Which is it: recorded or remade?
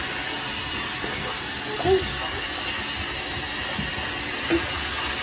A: recorded